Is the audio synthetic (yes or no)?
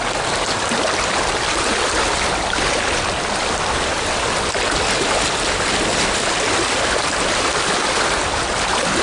no